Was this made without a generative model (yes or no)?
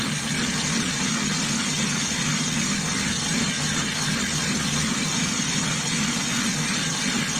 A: yes